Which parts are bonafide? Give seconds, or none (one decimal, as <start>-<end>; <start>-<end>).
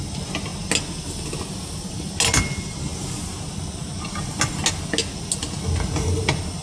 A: 0.0-6.6